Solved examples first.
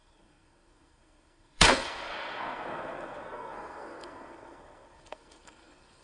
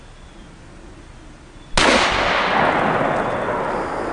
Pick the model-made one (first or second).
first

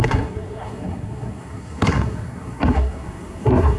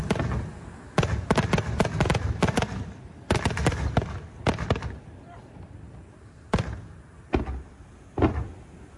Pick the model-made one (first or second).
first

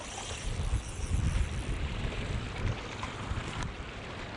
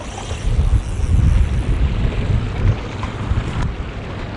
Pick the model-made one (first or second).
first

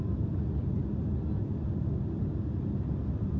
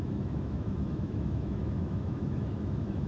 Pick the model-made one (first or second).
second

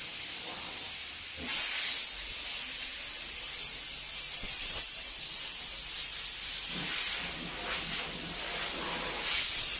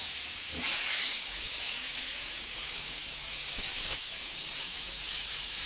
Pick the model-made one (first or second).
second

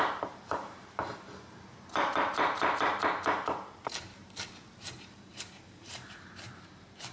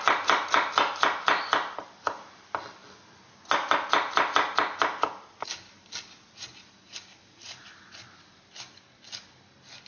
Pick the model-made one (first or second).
first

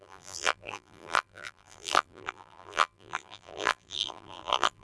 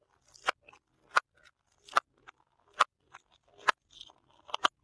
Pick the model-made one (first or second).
first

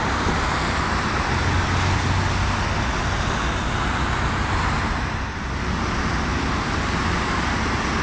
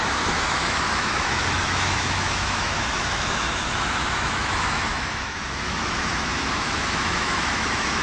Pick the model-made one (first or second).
second